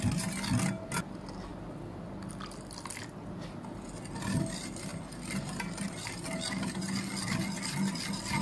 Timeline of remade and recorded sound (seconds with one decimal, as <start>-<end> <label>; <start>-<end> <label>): 0.0-8.4 recorded